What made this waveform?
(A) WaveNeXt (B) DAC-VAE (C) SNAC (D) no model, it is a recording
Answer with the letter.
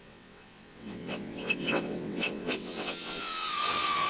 A